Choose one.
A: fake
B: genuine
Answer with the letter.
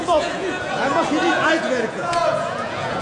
A